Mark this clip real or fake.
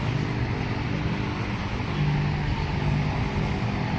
real